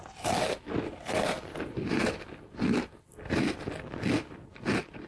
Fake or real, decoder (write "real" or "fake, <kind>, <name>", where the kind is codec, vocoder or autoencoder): real